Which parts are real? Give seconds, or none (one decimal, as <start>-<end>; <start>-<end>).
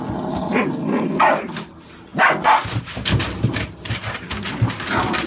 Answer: 0.0-5.3